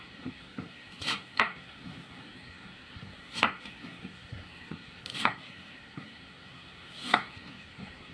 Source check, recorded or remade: remade